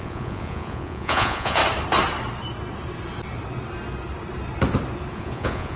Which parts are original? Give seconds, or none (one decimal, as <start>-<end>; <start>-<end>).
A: 1.6-5.1